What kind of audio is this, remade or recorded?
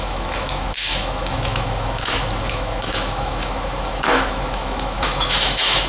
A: remade